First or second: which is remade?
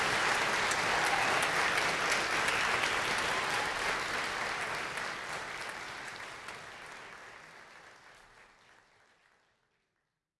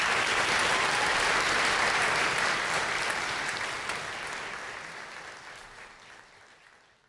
second